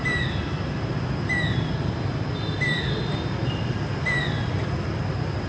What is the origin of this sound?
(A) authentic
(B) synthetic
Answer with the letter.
A